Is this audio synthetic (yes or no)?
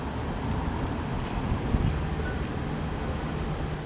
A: no